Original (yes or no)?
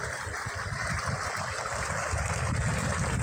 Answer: yes